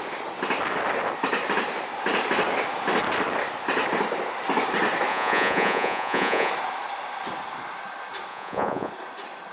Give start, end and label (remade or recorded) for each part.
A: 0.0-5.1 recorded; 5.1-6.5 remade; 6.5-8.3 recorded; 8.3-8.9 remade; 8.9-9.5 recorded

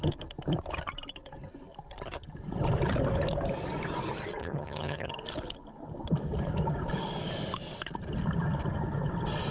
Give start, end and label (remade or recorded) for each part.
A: 0.0-4.4 recorded; 4.4-5.1 remade; 5.1-9.5 recorded

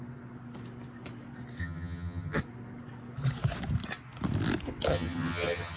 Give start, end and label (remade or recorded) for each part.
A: 0.0-1.6 recorded; 1.6-2.4 remade; 2.4-4.9 recorded; 4.9-5.8 remade

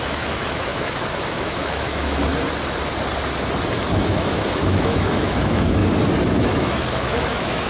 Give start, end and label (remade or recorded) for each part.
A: 0.0-2.3 remade; 2.3-3.9 recorded; 3.9-5.8 remade; 5.8-6.4 recorded; 6.4-7.7 remade

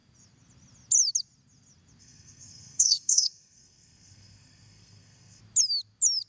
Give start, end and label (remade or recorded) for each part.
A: 0.0-2.0 recorded; 2.0-5.4 remade; 5.4-6.3 recorded

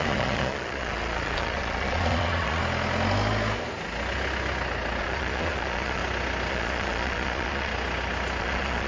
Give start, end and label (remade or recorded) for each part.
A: 0.0-2.6 remade; 2.6-5.0 recorded; 5.0-6.0 remade; 6.0-6.5 recorded; 6.5-7.7 remade; 7.7-8.4 recorded; 8.4-8.9 remade

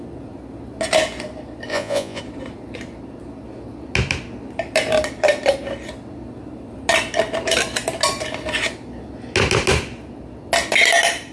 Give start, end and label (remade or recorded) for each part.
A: 0.0-1.7 recorded; 1.7-2.2 remade; 2.2-11.3 recorded